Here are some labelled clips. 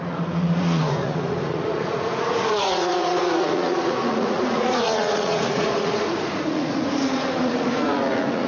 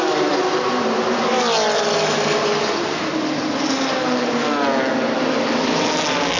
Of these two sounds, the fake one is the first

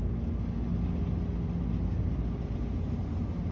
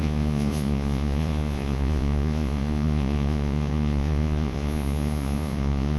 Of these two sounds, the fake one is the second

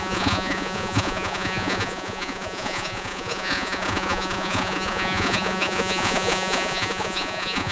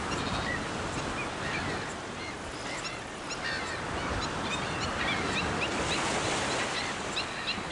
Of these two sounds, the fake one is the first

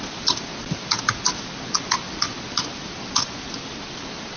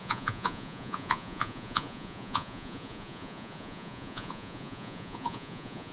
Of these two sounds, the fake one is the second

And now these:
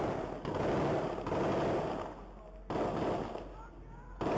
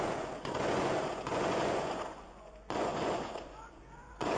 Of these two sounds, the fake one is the second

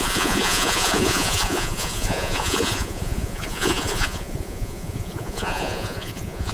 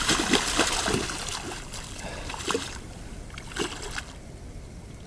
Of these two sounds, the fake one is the first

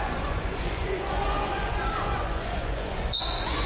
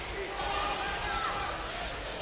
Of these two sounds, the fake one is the first